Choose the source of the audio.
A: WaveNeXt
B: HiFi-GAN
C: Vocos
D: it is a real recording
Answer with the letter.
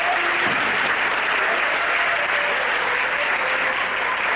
D